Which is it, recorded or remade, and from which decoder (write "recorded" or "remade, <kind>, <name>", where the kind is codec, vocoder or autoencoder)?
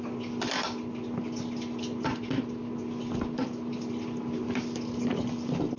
recorded